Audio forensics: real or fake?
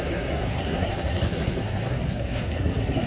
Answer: fake